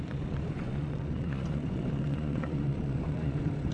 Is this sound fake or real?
fake